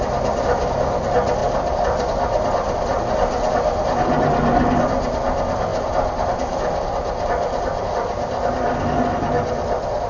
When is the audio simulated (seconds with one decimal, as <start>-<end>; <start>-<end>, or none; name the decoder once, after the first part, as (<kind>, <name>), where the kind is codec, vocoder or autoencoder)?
none